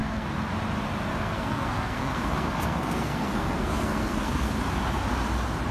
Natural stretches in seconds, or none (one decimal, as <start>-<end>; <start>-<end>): 0.5-1.1; 4.5-5.7